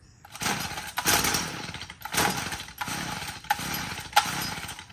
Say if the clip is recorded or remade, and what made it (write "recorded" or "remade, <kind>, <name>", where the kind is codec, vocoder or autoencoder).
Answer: recorded